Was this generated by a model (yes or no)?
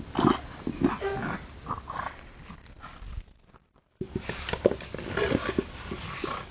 no